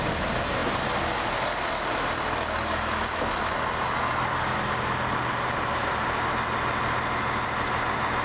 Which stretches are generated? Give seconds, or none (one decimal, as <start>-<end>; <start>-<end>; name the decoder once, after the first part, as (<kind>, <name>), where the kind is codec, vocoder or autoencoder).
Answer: none